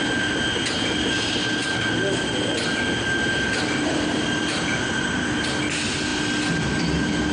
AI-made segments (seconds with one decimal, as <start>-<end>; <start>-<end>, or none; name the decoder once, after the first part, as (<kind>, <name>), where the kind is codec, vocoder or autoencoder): 1.6-5.6 (vocoder, BigVGAN v2)